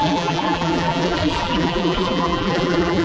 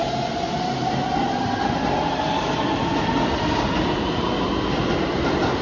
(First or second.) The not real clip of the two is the first